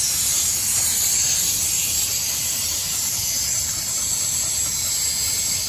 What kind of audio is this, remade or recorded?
remade